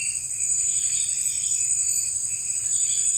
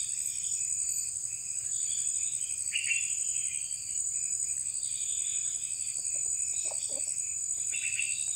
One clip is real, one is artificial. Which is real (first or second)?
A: second